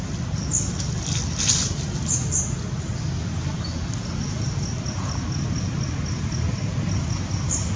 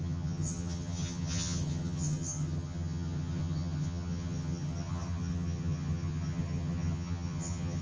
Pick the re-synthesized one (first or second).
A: second